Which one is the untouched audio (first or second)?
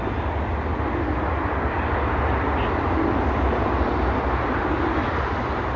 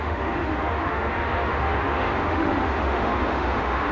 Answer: first